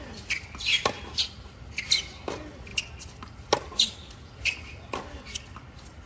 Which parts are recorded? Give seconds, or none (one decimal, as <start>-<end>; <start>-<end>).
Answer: 0.0-6.1